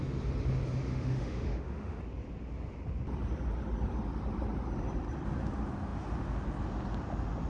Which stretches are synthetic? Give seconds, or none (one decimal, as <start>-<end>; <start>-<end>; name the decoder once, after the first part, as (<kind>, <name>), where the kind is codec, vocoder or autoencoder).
0.9-2.0 (autoencoder, DAC-VAE)

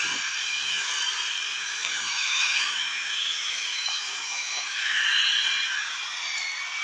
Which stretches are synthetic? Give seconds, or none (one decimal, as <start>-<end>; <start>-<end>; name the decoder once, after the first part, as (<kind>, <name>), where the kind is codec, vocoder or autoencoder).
0.4-0.9 (autoencoder, DAC-VAE); 1.5-5.0

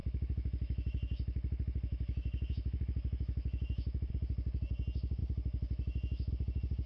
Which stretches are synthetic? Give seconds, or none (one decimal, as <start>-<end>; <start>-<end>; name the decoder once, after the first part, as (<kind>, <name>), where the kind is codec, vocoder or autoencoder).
0.0-4.1 (autoencoder, DAC-VAE); 5.2-6.3

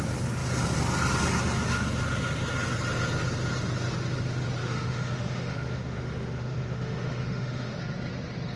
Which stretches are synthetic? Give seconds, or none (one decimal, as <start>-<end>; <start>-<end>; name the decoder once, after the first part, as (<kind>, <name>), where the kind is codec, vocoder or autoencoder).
4.6-7.8 (autoencoder, DAC-VAE)

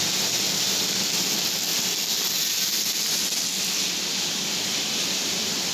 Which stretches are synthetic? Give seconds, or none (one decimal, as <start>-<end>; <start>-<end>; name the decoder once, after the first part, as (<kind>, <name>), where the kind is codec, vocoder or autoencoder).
none

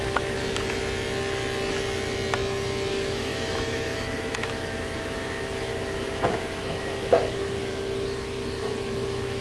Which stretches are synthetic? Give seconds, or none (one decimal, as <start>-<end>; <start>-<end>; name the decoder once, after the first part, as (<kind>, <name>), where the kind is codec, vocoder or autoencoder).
0.0-0.4 (autoencoder, DAC-VAE); 2.9-9.4

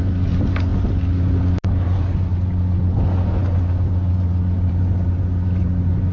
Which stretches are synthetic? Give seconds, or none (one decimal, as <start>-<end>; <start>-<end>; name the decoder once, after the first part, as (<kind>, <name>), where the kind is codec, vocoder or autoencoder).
none